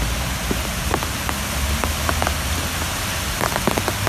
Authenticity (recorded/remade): recorded